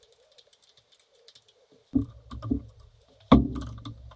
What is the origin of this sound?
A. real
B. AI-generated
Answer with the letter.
A